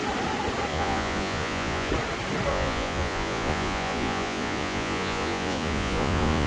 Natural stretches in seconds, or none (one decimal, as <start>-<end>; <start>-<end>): 0.0-0.7; 1.9-2.5